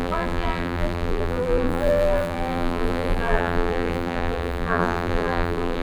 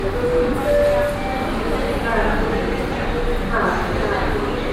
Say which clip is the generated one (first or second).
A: first